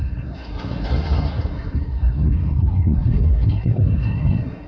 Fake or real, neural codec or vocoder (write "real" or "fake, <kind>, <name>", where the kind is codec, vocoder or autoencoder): fake, codec, SNAC